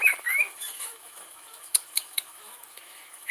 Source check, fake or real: fake